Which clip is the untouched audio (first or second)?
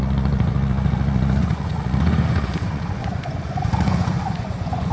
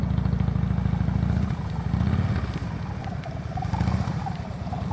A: second